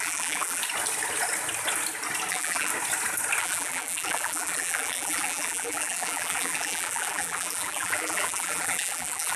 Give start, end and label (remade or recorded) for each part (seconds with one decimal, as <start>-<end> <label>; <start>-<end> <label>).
0.0-0.6 remade; 0.6-2.3 recorded; 2.3-2.7 remade; 2.7-3.4 recorded; 3.4-9.4 remade